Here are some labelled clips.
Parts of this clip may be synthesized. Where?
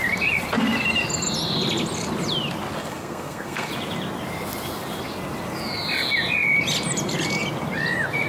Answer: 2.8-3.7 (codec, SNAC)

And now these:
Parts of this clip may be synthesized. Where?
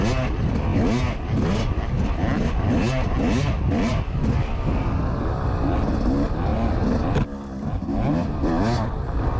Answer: none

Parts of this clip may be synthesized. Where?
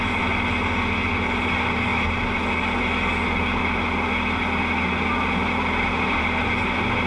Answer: none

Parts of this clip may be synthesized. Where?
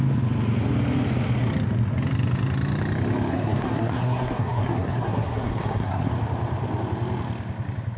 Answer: 3.3-6.1 (codec, SNAC)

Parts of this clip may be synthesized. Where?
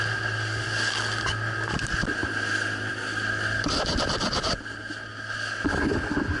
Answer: none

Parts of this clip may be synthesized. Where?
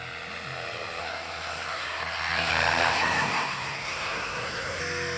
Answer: 1.0-2.5 (codec, SNAC); 2.9-4.8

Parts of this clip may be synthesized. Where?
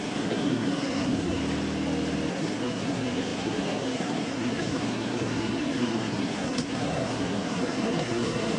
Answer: 0.0-1.4 (codec, SNAC); 2.3-8.6